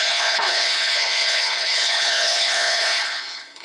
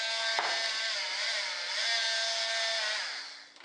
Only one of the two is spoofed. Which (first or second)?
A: first